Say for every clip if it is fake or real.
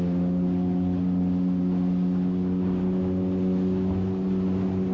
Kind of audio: real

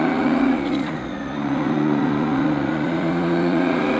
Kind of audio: fake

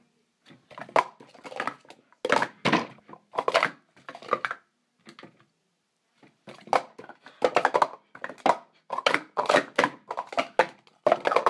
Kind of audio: real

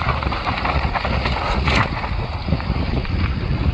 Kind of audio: fake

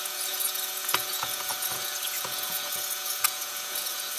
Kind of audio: fake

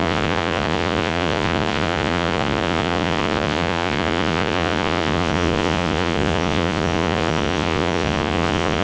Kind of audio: fake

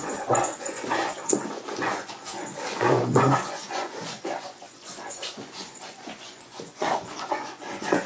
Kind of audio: fake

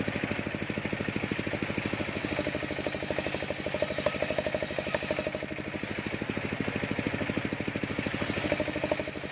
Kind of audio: real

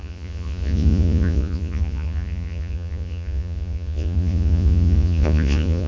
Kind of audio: fake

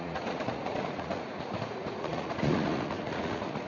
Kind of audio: fake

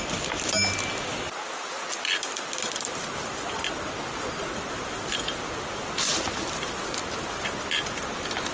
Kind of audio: real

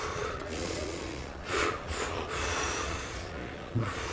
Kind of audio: fake